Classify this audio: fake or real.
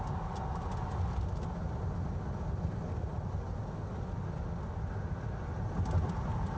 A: real